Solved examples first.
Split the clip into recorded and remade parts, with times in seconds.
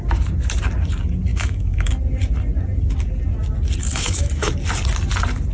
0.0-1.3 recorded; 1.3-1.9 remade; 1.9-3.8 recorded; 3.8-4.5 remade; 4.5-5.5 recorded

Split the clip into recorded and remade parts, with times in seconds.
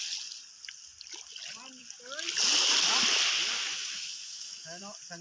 0.0-3.6 recorded; 3.6-4.8 remade; 4.8-5.2 recorded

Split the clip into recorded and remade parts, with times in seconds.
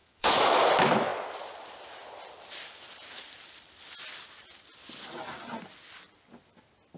0.0-0.5 remade; 0.5-7.0 recorded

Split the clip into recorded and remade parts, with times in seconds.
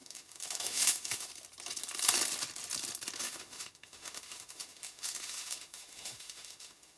0.0-1.3 remade; 1.3-3.2 recorded; 3.2-7.0 remade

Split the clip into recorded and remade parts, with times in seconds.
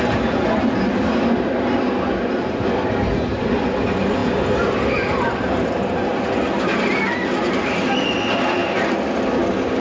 0.0-9.8 recorded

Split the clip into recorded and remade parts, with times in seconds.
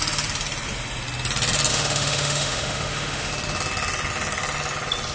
0.0-1.7 recorded; 1.7-3.3 remade; 3.3-5.1 recorded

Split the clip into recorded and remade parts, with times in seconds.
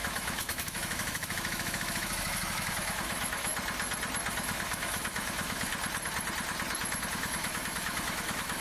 0.0-3.5 remade; 3.5-4.3 recorded; 4.3-5.7 remade; 5.7-7.1 recorded; 7.1-8.6 remade